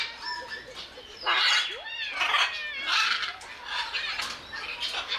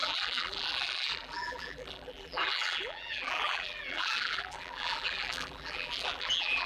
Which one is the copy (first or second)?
second